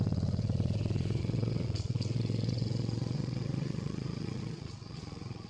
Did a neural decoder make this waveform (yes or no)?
yes